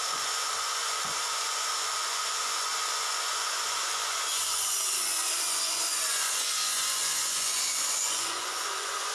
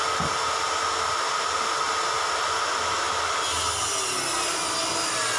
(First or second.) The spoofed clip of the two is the first